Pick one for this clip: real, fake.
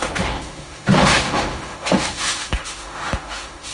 fake